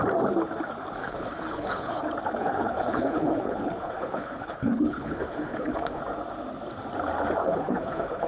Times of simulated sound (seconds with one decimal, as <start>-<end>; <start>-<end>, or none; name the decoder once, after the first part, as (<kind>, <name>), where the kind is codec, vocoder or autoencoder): 1.0-2.0 (codec, HILCodec); 2.4-6.0; 7.4-8.3